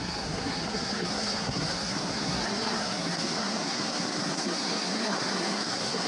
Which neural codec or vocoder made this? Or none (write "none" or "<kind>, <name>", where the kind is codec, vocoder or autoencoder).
codec, SNAC